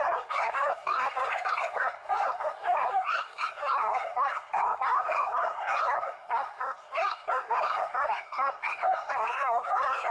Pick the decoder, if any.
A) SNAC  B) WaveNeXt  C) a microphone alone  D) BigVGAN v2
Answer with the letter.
A